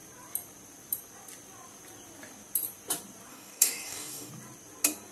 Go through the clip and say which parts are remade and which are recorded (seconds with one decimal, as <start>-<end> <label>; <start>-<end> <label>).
0.0-3.3 recorded; 3.3-4.3 remade; 4.3-5.1 recorded